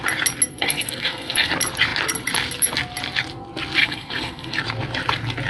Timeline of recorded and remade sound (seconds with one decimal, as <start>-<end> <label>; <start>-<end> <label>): 0.0-0.5 recorded; 0.5-1.5 remade; 1.5-3.8 recorded; 3.8-4.6 remade; 4.6-5.5 recorded